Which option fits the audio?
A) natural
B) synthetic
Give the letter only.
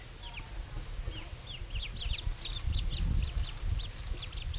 A